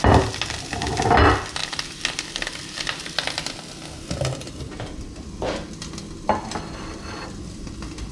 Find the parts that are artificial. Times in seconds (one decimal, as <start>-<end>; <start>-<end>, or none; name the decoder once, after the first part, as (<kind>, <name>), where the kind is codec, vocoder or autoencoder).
none